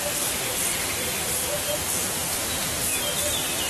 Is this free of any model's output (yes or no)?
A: yes